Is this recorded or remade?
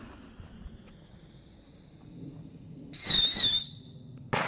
recorded